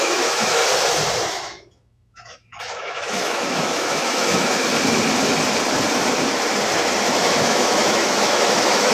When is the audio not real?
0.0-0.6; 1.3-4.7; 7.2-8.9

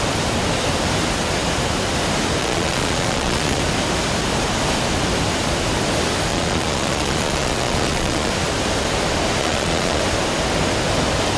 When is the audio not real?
2.4-3.6; 6.3-8.3; 9.4-10.0

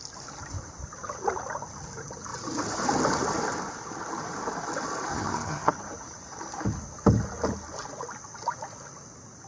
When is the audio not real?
5.1-5.7

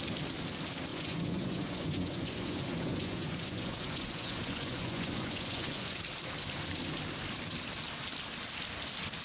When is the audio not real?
0.9-6.0

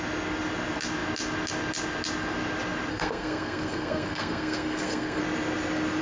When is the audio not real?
2.9-5.2

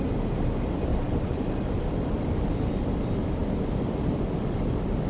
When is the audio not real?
0.9-1.5